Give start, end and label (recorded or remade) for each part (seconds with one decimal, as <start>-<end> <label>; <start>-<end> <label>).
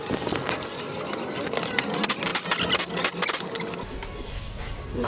0.0-5.1 recorded